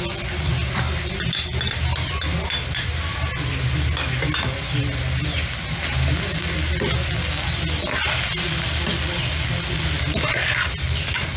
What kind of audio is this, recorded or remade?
recorded